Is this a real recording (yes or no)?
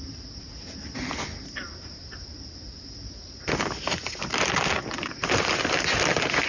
yes